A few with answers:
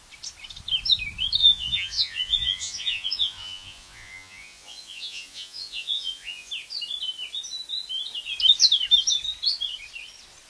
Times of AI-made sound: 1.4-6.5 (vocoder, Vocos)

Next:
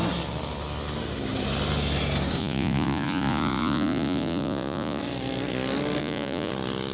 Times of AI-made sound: 2.4-5.0 (vocoder, Vocos); 6.0-6.5

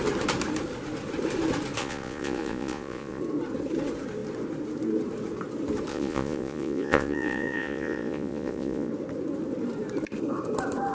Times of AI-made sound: 1.8-3.2 (vocoder, Vocos); 5.9-8.9

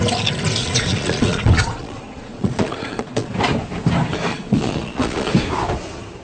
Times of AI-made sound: 0.6-3.3 (vocoder, Vocos); 4.3-5.3

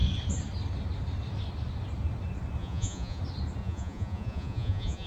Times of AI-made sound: 2.6-3.2 (vocoder, Vocos); 3.6-5.1

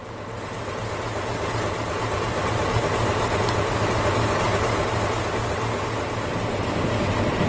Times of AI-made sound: none

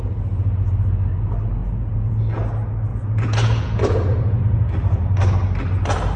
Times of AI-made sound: 1.6-2.2 (vocoder, Vocos); 2.9-4.4

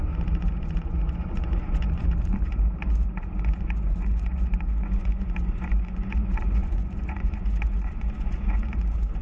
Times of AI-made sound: 0.0-9.2 (vocoder, Vocos)